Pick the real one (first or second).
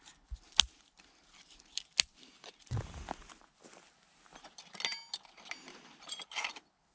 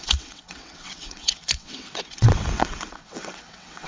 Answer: first